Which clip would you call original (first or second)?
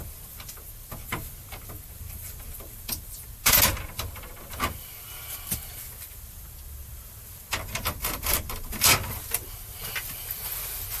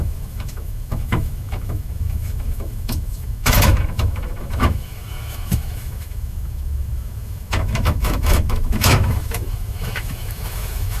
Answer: first